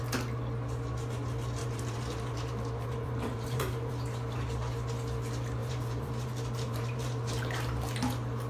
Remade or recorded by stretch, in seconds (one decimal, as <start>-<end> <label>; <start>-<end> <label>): 0.0-1.6 recorded; 1.6-3.9 remade; 3.9-5.6 recorded; 5.6-7.4 remade; 7.4-8.5 recorded